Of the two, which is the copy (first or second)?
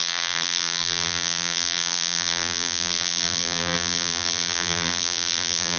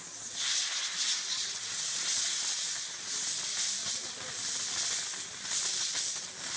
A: first